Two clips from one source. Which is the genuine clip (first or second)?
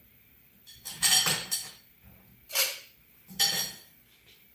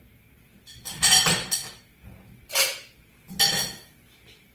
second